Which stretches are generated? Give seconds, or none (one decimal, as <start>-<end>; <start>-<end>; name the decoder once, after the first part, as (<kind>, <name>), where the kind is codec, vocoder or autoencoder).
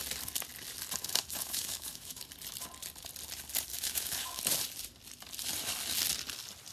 1.0-2.2 (autoencoder, DAC-VAE); 3.7-4.4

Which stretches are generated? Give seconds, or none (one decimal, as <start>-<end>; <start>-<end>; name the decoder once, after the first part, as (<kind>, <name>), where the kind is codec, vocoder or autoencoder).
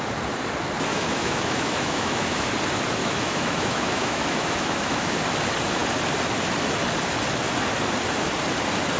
0.9-2.5 (autoencoder, DAC-VAE); 3.0-5.2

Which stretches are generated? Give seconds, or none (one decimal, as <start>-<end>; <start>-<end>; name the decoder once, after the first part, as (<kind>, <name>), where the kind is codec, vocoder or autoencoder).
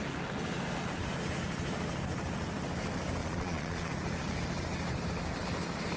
3.2-3.9 (vocoder, Vocos)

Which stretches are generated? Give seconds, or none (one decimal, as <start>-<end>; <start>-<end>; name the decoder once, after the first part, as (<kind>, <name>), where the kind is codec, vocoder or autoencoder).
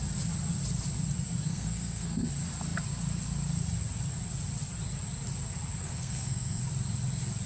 1.5-2.3 (codec, SNAC); 5.8-6.6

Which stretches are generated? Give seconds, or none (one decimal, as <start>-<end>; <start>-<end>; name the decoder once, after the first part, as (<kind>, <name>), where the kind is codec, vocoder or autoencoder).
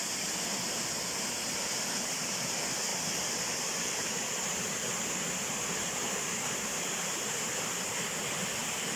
2.9-7.7 (vocoder, BigVGAN v2)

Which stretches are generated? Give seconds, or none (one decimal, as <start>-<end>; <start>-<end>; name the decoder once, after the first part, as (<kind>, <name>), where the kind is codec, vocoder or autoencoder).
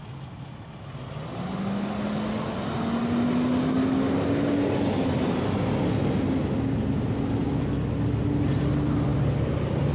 none